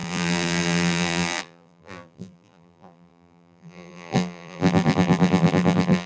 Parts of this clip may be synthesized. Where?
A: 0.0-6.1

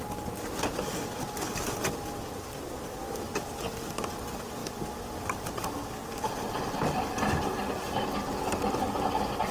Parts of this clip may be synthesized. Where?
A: 4.6-5.2

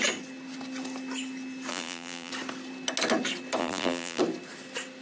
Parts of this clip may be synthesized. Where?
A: 1.7-2.3; 3.6-4.2

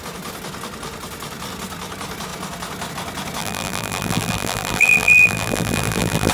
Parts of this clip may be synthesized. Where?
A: 3.4-6.3

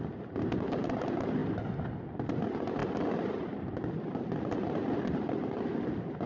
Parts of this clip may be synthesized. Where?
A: 0.0-1.4; 2.0-6.3

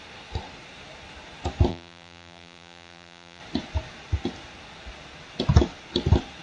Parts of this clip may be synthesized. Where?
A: 1.7-3.4

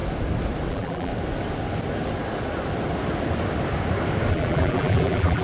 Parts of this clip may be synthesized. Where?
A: 0.7-1.1; 4.3-5.4